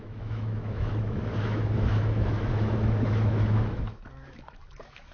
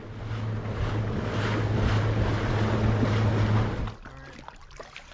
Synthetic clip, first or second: first